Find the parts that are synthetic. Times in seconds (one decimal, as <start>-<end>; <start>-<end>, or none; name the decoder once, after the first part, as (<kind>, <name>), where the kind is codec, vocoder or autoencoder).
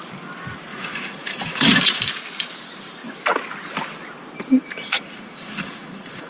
0.7-2.1 (vocoder, Vocos); 4.8-6.3